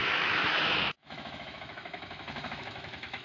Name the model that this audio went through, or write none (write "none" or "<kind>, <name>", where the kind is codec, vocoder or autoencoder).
autoencoder, DAC-VAE